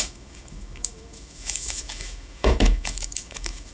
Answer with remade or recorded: remade